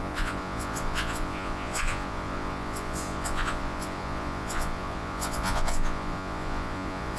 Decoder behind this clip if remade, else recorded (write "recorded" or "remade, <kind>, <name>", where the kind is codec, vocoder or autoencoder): remade, vocoder, Vocos